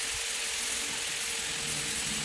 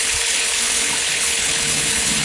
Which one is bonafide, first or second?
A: first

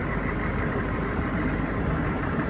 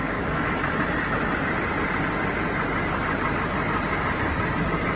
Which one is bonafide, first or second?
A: second